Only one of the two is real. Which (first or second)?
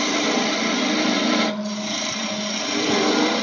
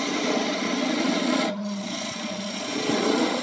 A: first